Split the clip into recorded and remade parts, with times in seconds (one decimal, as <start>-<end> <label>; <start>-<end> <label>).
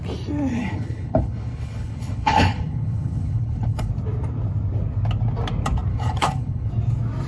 0.0-0.5 recorded; 0.5-3.9 remade; 3.9-5.9 recorded; 5.9-6.7 remade; 6.7-7.3 recorded